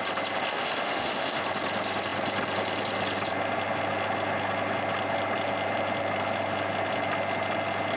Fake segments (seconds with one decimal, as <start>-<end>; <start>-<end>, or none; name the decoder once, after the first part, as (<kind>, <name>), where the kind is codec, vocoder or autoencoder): 0.5-1.4 (autoencoder, DAC-VAE)